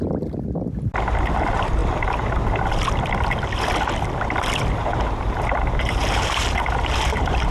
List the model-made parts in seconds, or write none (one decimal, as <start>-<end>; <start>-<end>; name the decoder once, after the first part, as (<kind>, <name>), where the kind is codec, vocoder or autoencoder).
4.8-7.5 (vocoder, BigVGAN v2)